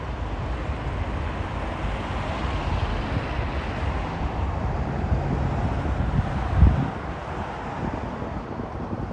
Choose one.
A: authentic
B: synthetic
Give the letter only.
A